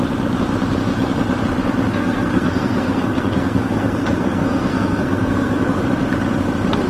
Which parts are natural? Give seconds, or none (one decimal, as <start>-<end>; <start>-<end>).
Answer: 0.0-1.9; 5.8-6.9